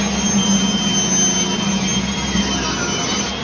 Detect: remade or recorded recorded